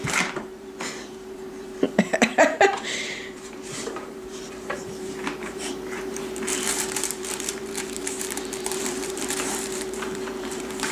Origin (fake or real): fake